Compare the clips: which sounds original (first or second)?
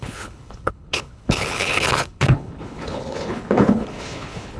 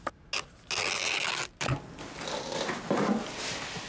second